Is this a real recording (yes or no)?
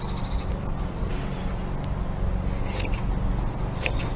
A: yes